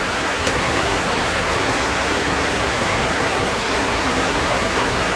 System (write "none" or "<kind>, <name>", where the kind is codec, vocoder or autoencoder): codec, SNAC